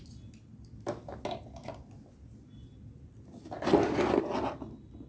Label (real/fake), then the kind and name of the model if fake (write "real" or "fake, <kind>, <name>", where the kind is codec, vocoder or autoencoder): real